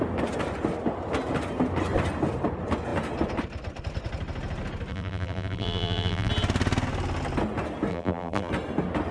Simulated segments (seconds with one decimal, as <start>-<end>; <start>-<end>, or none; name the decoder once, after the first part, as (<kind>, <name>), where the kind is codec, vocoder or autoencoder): 4.9-6.3 (vocoder, BigVGAN v2); 7.9-8.5